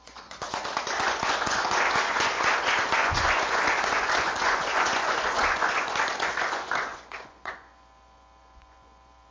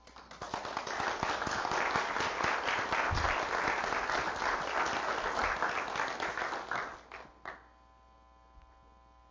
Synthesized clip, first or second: first